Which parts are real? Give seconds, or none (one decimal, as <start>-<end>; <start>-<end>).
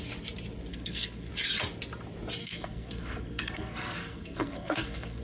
0.0-0.7; 1.3-2.4